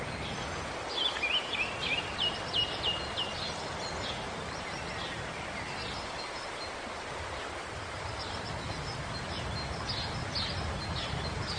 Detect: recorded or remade recorded